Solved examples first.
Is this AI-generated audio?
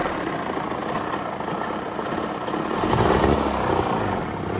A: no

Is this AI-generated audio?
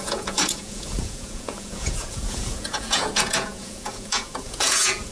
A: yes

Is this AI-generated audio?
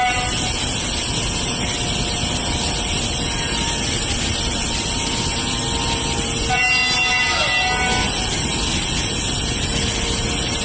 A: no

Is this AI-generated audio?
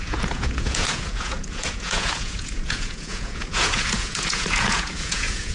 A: yes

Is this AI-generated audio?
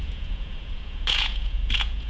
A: yes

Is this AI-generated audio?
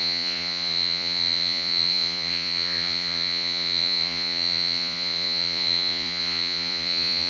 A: yes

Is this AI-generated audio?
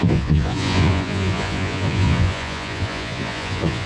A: yes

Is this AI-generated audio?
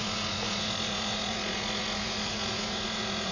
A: yes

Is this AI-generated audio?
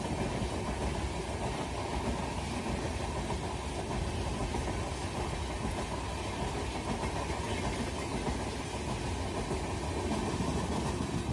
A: no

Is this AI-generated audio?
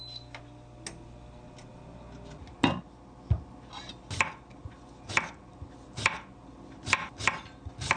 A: no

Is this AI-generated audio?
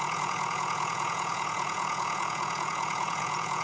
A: yes